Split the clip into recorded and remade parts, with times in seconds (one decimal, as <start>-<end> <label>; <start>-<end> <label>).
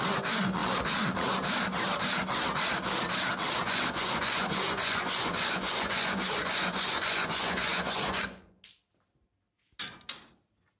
0.0-3.6 recorded; 3.6-8.6 remade; 8.6-10.8 recorded